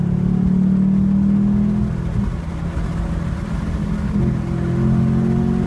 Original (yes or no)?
yes